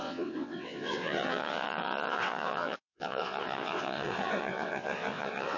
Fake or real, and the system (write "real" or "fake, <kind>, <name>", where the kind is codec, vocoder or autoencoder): fake, vocoder, WaveNeXt